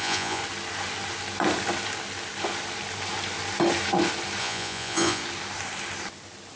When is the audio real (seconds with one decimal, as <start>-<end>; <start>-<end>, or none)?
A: 0.4-4.4; 5.2-6.6